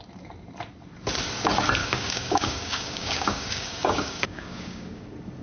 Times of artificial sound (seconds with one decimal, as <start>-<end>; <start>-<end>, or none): 1.8-5.0